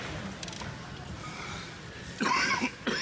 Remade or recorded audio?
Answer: recorded